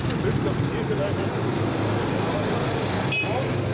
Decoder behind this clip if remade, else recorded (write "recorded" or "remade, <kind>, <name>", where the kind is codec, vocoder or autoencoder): recorded